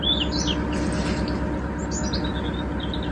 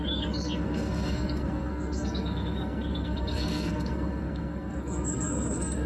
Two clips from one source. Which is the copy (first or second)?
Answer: second